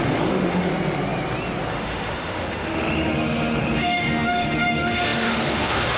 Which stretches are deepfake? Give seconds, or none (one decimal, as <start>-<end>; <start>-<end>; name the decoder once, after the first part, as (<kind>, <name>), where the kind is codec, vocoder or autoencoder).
0.0-0.7 (autoencoder, DAC-VAE); 1.7-6.0